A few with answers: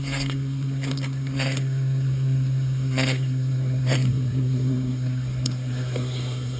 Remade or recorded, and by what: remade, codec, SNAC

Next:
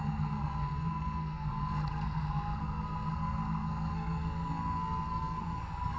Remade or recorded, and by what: remade, codec, SNAC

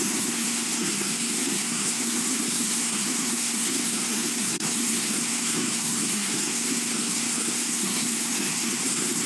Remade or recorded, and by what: remade, codec, SNAC